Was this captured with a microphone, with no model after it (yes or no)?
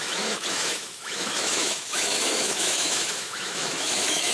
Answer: no